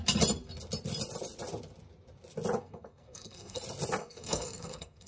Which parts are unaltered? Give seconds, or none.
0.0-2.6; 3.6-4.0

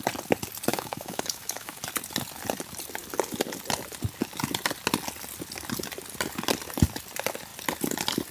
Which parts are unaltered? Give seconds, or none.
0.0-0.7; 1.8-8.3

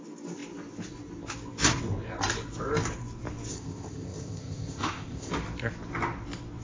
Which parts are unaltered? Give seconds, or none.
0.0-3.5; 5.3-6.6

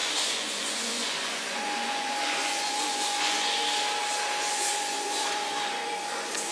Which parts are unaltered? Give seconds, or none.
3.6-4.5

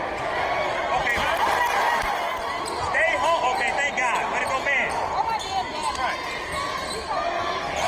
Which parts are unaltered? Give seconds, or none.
0.0-7.9

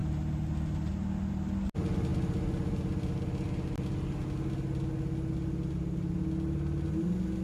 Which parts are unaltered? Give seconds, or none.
0.0-7.4